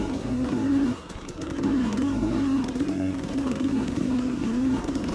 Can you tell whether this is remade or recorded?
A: remade